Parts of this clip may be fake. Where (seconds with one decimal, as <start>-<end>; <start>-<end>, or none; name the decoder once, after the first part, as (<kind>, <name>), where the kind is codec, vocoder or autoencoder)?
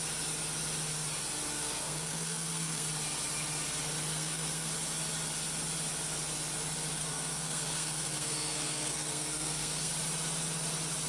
1.5-2.9 (codec, SNAC); 4.1-4.7; 7.0-9.9